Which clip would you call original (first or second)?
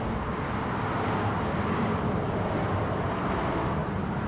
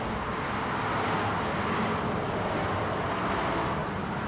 second